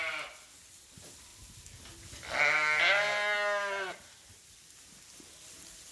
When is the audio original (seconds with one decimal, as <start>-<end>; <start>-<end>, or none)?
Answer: 0.0-5.9

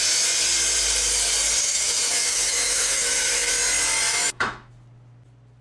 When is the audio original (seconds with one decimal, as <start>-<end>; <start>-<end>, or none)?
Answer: 0.0-1.6; 3.5-4.1; 4.7-5.6

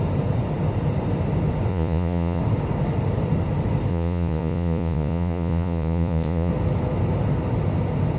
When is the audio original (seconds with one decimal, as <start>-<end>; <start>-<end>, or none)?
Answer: 0.0-1.7; 2.4-3.9; 6.5-8.2

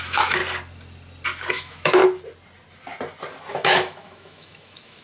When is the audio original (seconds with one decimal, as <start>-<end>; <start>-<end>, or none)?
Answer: 0.4-1.5; 2.0-3.5

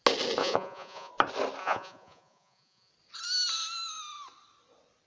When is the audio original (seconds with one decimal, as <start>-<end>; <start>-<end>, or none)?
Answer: 0.0-0.4; 1.1-1.6; 2.9-5.1

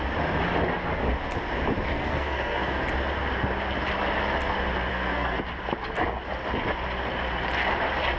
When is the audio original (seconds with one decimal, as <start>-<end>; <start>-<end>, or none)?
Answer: 0.0-1.9; 2.9-4.9; 5.4-8.2

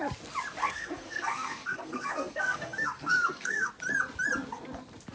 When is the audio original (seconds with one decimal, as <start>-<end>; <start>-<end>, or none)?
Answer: 0.0-0.6; 3.7-5.1